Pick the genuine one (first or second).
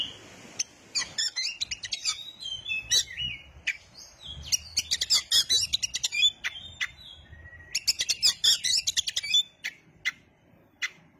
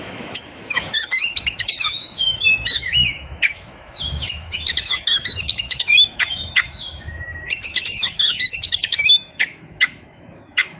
first